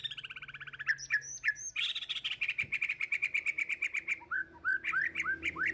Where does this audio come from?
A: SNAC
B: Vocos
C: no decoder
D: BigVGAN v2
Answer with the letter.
C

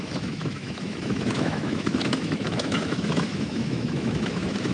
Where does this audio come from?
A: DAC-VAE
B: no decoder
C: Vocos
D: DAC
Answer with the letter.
A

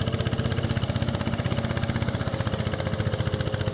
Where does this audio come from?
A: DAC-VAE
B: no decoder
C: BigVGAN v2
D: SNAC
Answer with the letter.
B